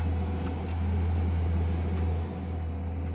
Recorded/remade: recorded